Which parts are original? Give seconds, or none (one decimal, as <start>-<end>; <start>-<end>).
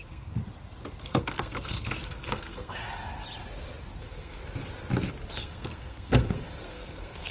0.4-1.0; 2.8-4.0; 4.4-5.3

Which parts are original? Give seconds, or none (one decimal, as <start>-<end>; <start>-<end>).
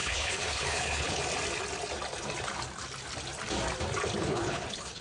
1.2-4.2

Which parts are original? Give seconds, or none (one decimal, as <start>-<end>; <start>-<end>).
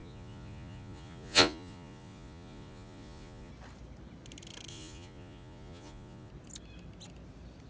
3.5-4.7; 6.3-7.7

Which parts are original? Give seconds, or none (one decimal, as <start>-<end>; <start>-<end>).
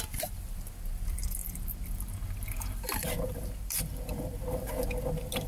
none